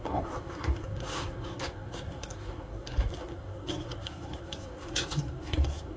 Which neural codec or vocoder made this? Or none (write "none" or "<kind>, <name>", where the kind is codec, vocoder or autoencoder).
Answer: codec, SNAC